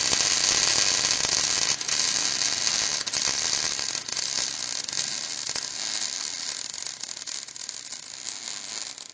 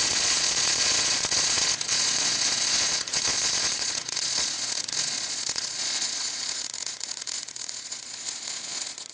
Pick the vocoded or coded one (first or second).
second